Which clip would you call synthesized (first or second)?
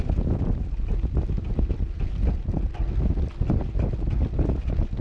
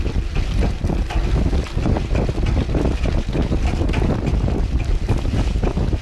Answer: second